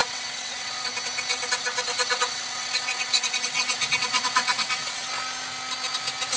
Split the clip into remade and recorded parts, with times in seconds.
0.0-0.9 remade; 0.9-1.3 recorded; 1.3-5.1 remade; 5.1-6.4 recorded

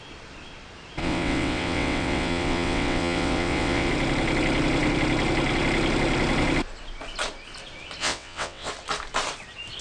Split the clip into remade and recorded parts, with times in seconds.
0.0-1.0 recorded; 1.0-3.9 remade; 3.9-8.0 recorded; 8.0-8.7 remade; 8.7-9.8 recorded